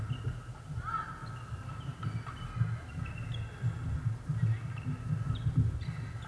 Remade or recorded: recorded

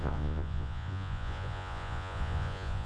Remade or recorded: remade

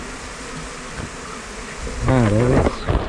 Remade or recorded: recorded